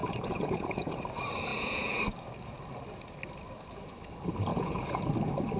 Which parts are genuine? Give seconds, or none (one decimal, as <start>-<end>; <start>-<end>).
1.0-1.5; 2.0-4.5; 5.0-5.6